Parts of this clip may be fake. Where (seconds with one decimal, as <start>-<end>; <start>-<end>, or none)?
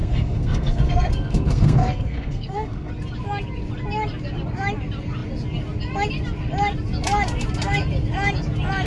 0.0-2.9